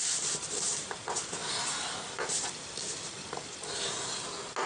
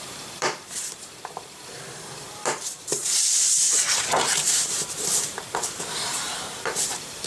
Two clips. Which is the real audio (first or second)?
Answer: first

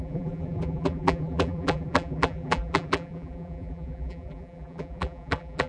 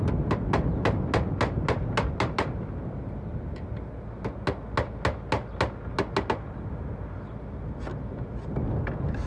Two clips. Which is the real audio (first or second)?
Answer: second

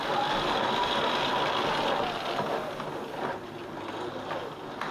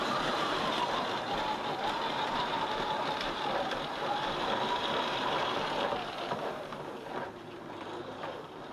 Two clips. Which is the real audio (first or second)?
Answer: first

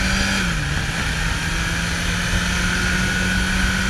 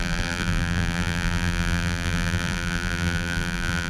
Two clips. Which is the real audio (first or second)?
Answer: first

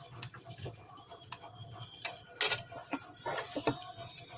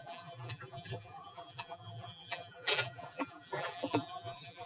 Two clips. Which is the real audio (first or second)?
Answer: first